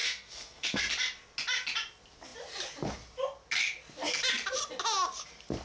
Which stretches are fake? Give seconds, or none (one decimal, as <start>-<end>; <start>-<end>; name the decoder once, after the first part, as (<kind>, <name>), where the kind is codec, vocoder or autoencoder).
0.0-0.8 (codec, SNAC)